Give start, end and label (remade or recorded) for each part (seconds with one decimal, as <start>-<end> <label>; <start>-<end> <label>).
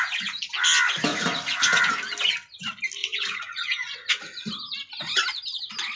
0.0-1.1 recorded; 1.1-1.8 remade; 1.8-3.0 recorded; 3.0-4.1 remade; 4.1-6.0 recorded